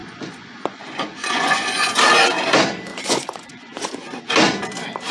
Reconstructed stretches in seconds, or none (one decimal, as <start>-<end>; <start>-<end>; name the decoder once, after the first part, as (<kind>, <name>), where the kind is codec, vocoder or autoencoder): 0.0-2.0 (vocoder, Vocos); 2.9-4.2